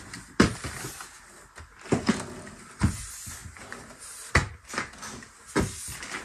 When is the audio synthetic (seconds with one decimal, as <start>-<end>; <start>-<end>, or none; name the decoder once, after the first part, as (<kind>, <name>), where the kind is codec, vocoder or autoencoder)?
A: 3.4-4.0 (vocoder, BigVGAN v2)